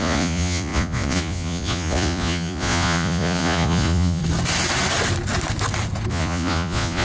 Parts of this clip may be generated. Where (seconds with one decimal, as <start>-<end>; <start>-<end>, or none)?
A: 0.0-4.2; 6.1-7.0